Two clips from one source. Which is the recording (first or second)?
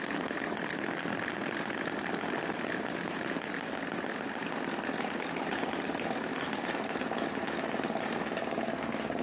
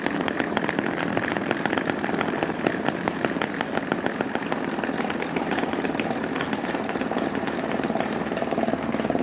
first